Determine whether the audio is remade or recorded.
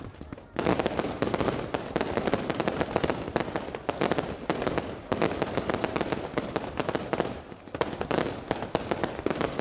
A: recorded